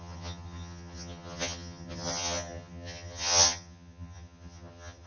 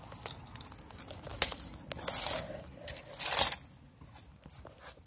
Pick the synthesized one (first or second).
first